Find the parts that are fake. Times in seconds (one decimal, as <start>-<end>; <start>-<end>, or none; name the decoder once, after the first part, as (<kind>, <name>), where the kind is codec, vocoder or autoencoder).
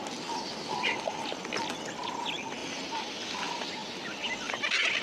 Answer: none